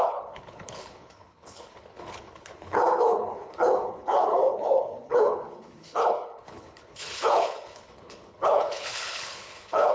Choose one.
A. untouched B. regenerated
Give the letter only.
B